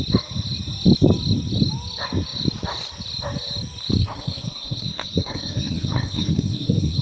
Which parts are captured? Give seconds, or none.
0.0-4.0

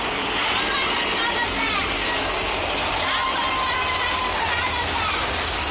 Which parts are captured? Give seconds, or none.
0.0-5.7

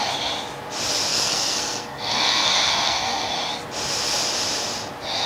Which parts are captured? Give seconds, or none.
0.0-1.1; 3.3-5.3